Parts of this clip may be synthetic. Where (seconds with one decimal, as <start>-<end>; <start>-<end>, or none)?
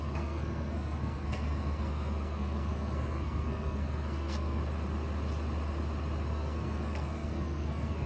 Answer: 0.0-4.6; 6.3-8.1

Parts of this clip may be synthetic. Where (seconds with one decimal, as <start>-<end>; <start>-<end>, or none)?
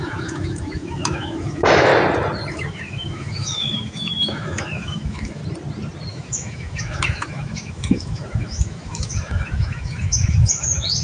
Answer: 0.0-1.9; 2.5-5.4; 6.1-11.0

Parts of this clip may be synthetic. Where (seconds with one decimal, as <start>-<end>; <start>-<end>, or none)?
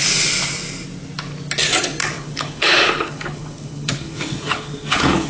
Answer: 2.0-5.3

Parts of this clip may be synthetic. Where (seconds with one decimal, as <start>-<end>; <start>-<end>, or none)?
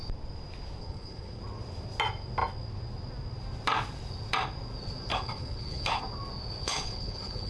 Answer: 0.8-1.4; 5.1-6.0; 6.6-7.5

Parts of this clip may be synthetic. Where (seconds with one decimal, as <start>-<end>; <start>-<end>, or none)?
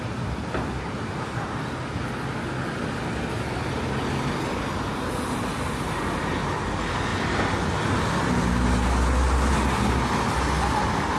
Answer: none